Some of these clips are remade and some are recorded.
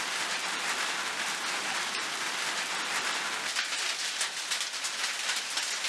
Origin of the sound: recorded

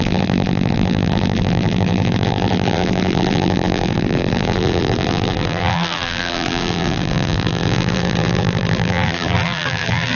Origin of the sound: remade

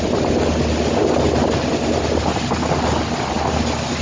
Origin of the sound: recorded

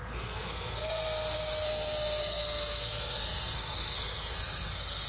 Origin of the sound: remade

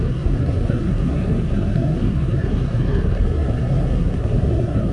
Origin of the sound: remade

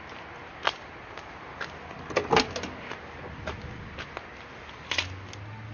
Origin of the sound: recorded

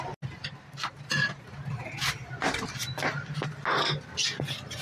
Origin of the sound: recorded